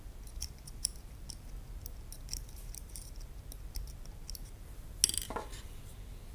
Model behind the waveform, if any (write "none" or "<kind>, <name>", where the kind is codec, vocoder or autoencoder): none